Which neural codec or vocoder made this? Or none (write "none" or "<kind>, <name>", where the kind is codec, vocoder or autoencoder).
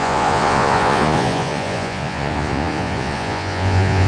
vocoder, Vocos